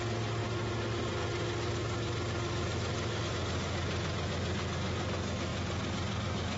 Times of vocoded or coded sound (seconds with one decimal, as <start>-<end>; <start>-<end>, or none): none